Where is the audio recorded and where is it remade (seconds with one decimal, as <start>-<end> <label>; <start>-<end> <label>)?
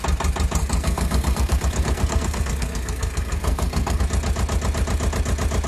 0.0-0.6 recorded; 0.6-4.0 remade; 4.0-5.7 recorded